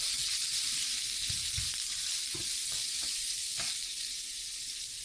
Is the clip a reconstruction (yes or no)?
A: no